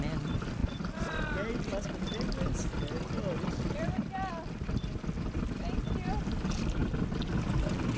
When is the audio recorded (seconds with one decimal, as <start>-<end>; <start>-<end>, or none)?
0.0-8.0

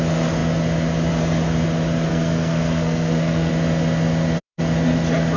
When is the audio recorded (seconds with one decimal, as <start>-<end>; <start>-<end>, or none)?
0.0-2.1; 3.5-5.4

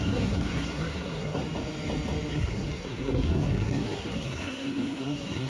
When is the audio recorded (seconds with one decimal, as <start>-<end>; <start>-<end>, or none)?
1.4-2.3

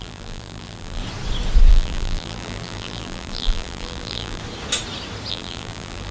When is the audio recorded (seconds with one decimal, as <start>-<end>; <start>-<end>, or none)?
1.0-1.7; 4.4-5.3

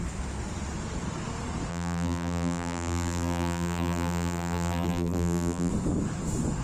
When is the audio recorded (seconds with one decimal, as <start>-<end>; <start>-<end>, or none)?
0.0-1.7; 5.7-6.6

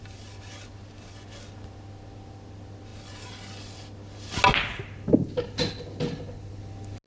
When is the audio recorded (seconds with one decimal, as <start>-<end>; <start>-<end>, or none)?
0.0-7.1